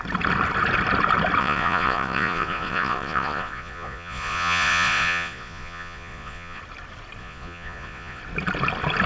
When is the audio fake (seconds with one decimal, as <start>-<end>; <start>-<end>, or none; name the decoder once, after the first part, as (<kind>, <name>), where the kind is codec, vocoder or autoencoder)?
1.4-6.6 (vocoder, Vocos); 7.2-8.2